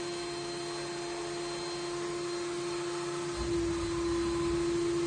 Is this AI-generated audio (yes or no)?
no